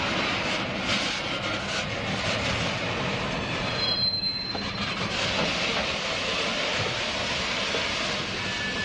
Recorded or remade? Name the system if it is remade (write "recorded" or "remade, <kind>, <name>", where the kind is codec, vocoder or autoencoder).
recorded